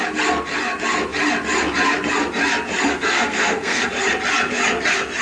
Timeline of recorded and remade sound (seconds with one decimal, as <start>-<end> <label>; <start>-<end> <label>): 0.0-2.9 recorded; 2.9-3.9 remade; 3.9-5.2 recorded